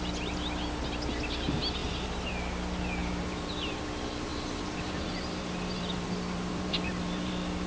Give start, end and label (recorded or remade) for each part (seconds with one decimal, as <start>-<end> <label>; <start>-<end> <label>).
0.0-1.8 recorded; 1.8-2.3 remade; 2.3-3.0 recorded; 3.0-3.8 remade; 3.8-4.3 recorded; 4.3-7.3 remade; 7.3-7.7 recorded